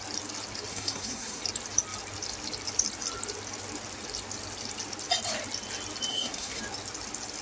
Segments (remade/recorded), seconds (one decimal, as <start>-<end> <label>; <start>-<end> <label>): 0.0-0.7 recorded; 0.7-1.4 remade; 1.4-6.1 recorded; 6.1-6.6 remade; 6.6-7.4 recorded